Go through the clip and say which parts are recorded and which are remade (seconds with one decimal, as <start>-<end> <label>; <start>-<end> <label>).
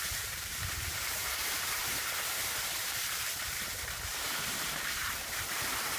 0.0-1.8 remade; 1.8-2.8 recorded; 2.8-6.0 remade